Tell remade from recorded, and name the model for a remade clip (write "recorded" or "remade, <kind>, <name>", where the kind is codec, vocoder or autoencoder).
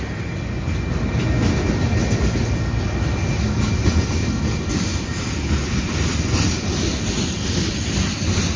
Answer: recorded